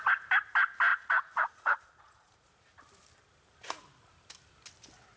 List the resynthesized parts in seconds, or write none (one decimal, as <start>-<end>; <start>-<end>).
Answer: 0.9-2.5